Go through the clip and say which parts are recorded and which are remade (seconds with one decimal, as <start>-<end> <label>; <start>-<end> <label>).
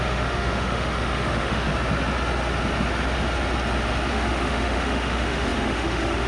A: 0.0-1.7 remade; 1.7-4.1 recorded; 4.1-6.3 remade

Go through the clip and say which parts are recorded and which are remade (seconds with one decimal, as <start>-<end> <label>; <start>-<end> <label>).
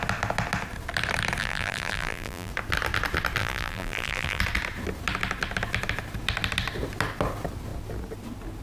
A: 0.0-1.4 recorded; 1.4-2.5 remade; 2.5-3.4 recorded; 3.4-4.4 remade; 4.4-8.6 recorded